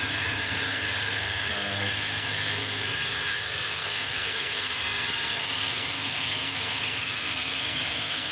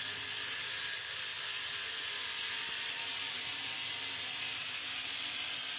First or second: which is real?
second